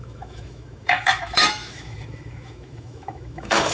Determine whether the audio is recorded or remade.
remade